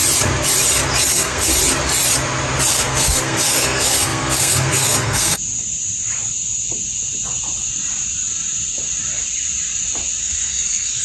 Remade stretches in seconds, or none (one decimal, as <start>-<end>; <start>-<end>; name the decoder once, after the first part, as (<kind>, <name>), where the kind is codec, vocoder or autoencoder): 1.1-1.5 (codec, SNAC); 2.7-5.4; 10.2-11.0